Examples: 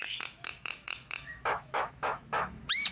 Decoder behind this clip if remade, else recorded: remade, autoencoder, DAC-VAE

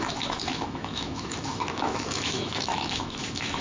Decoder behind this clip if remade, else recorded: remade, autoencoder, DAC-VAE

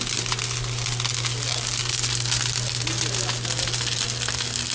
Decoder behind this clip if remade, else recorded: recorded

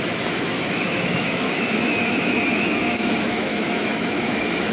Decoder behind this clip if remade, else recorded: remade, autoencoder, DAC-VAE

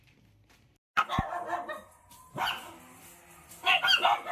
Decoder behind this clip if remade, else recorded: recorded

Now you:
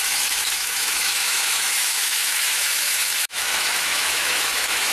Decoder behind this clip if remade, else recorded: remade, autoencoder, DAC-VAE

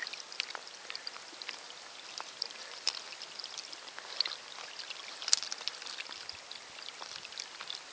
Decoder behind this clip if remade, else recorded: recorded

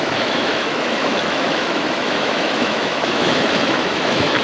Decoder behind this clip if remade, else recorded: remade, autoencoder, DAC-VAE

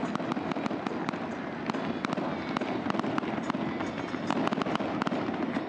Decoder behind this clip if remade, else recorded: recorded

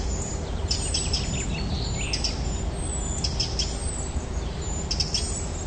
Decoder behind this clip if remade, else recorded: recorded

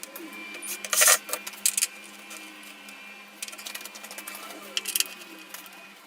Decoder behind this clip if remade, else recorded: recorded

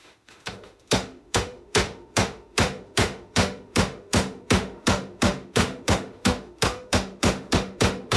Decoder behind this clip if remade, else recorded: remade, autoencoder, DAC-VAE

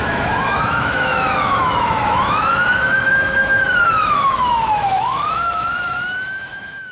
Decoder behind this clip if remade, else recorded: remade, autoencoder, DAC-VAE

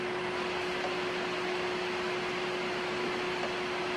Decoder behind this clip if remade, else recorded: recorded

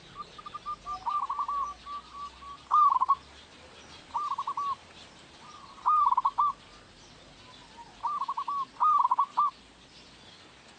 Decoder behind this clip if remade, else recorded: recorded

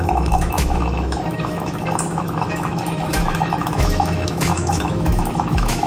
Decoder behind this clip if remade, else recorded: remade, autoencoder, DAC-VAE